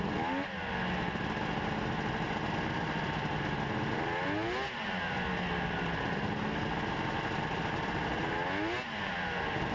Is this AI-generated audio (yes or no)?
no